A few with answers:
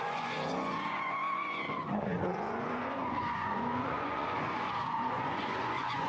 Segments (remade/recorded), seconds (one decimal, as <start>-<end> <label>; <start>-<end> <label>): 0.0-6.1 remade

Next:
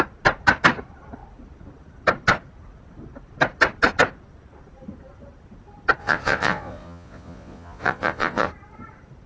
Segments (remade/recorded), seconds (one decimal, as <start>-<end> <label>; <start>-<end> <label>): 0.0-6.0 recorded; 6.0-8.5 remade; 8.5-9.3 recorded

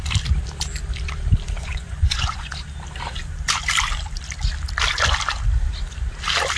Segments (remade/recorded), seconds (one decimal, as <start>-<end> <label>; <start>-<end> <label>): 0.0-1.6 recorded; 1.6-2.5 remade; 2.5-6.6 recorded

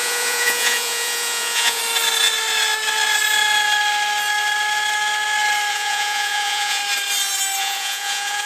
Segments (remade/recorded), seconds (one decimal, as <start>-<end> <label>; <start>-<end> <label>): 0.0-1.8 remade; 1.8-5.7 recorded; 5.7-6.8 remade; 6.8-7.6 recorded; 7.6-8.5 remade

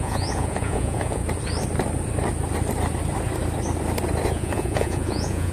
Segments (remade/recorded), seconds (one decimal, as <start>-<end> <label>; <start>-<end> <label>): 0.0-1.2 remade; 1.2-4.3 recorded; 4.3-5.5 remade